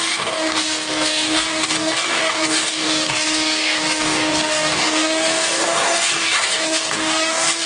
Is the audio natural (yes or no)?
no